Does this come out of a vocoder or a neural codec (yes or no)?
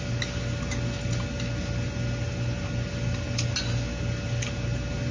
no